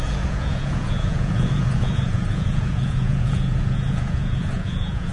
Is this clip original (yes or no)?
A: no